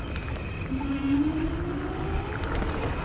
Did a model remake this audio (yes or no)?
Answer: no